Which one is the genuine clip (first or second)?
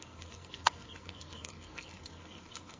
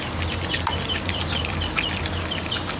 second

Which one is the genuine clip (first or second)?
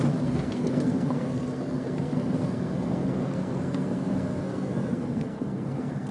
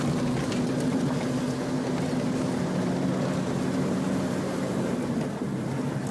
second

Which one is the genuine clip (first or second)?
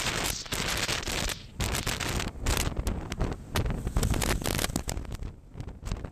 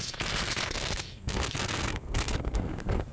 first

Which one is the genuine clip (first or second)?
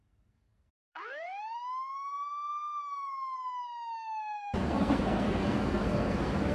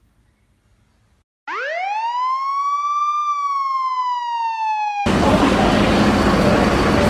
second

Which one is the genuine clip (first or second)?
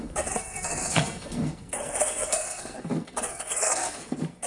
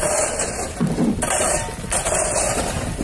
second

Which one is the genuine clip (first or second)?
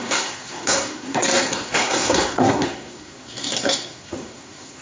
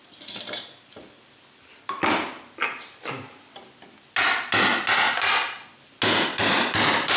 second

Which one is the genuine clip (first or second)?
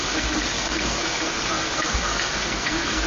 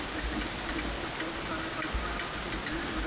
second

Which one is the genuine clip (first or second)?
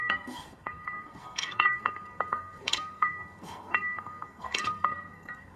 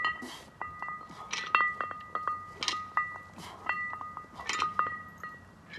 second